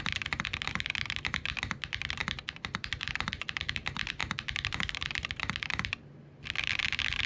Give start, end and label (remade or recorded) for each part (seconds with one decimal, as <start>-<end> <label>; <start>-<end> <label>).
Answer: 0.0-2.2 recorded; 2.2-3.7 remade; 3.7-7.3 recorded